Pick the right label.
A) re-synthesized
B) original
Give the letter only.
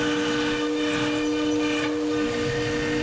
B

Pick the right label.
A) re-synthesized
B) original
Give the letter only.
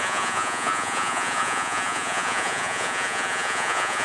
A